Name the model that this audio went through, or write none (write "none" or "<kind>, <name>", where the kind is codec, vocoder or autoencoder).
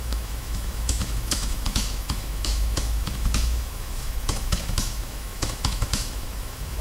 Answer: autoencoder, DAC-VAE